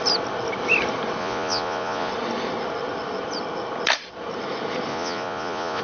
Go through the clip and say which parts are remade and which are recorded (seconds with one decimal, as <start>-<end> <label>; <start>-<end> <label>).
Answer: 0.0-1.2 recorded; 1.2-2.1 remade; 2.1-4.9 recorded; 4.9-5.8 remade